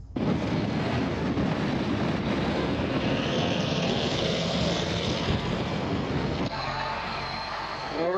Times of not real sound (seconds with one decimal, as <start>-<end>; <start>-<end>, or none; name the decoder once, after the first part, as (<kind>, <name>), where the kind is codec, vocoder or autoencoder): 0.0-1.2 (codec, SNAC); 2.5-8.2